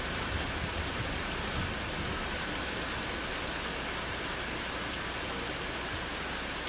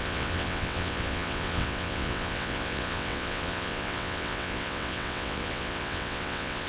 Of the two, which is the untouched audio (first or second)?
first